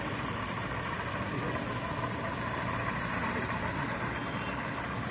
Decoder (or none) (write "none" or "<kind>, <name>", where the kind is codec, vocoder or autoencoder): none